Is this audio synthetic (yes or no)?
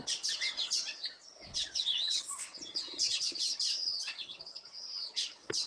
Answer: yes